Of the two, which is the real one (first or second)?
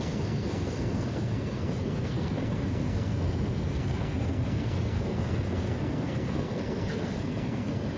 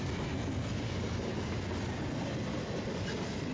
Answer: second